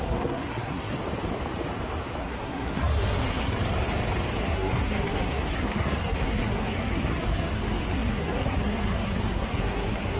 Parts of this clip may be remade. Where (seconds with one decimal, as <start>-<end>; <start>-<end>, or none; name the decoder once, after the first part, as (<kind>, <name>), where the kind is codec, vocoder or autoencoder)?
0.0-1.0 (codec, SNAC); 2.2-3.5; 4.4-10.2

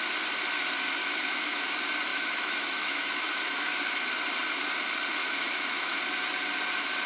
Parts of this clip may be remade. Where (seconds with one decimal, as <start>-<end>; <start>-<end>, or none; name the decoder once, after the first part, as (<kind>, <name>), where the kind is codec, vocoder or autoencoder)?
1.0-1.7 (autoencoder, DAC-VAE); 2.1-3.7; 5.2-6.0

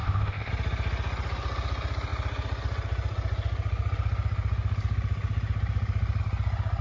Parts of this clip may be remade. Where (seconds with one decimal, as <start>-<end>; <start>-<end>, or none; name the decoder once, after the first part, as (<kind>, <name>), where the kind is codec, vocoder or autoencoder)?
0.0-0.5 (codec, ZipCodec)

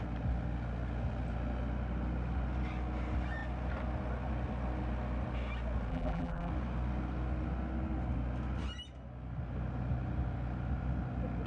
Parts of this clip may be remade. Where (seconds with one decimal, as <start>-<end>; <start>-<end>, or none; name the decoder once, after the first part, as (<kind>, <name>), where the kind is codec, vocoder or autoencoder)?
5.9-6.5 (vocoder, BigVGAN v2)

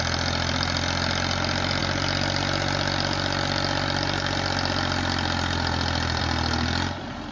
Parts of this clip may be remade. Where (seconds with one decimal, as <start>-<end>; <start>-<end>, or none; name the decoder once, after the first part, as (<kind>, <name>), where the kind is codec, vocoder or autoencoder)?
none

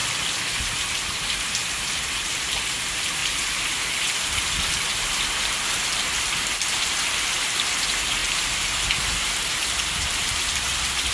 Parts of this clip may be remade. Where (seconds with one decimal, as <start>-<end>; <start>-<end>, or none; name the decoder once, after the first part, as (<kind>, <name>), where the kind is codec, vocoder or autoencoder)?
0.6-3.2 (vocoder, BigVGAN v2); 6.8-11.1

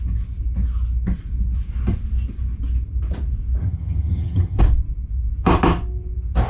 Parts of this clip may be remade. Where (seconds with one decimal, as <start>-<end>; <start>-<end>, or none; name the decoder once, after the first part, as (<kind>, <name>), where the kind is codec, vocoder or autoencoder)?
3.6-4.6 (vocoder, HiFi-GAN)

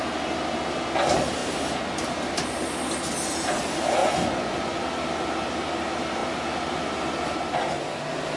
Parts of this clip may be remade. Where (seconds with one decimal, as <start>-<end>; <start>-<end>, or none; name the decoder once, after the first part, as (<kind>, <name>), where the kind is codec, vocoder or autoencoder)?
4.0-4.8 (vocoder, Vocos)